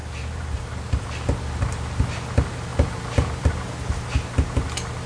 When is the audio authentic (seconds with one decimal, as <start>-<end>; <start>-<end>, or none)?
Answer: 0.7-2.7; 3.9-5.1